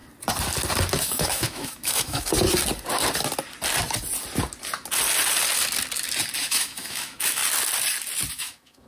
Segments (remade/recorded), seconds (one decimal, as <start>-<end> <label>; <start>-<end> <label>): 0.0-1.0 recorded; 1.0-2.3 remade; 2.3-6.4 recorded; 6.4-7.4 remade; 7.4-8.3 recorded; 8.3-8.9 remade